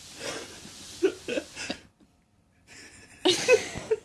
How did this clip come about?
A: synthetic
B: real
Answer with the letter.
B